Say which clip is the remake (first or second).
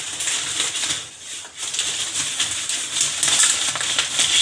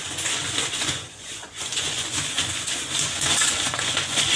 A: second